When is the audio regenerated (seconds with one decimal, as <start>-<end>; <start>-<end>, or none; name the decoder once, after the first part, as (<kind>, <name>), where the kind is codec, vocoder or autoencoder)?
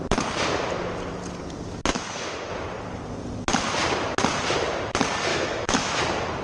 1.9-2.5 (autoencoder, DAC-VAE); 5.3-6.0